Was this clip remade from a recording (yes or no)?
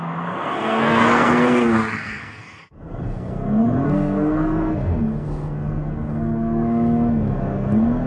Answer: yes